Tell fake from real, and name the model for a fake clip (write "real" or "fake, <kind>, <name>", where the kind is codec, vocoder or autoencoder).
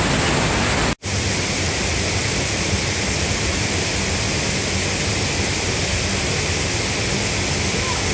real